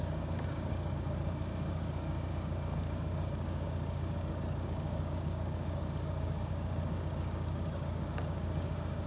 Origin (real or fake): fake